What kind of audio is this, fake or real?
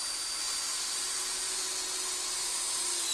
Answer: real